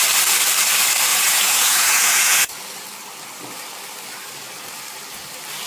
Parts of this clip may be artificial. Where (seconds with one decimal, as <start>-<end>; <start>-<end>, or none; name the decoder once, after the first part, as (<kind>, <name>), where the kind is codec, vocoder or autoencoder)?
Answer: 1.1-2.5 (vocoder, Vocos)